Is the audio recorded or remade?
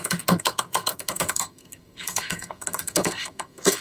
remade